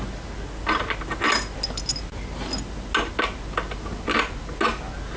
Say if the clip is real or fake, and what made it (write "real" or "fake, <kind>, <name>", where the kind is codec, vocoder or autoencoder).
real